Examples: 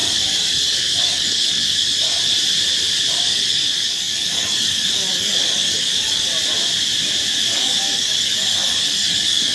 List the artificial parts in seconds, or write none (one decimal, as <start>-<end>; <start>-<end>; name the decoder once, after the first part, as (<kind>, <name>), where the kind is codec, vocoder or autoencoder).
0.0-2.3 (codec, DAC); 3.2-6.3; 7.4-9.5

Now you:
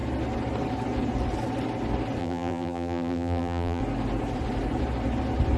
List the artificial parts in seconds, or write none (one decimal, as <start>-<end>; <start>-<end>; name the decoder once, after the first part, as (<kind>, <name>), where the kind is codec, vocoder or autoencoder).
2.2-3.8 (vocoder, BigVGAN v2)

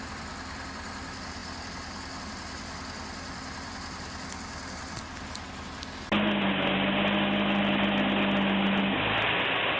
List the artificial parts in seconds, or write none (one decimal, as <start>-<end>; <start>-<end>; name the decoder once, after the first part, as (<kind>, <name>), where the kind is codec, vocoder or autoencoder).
none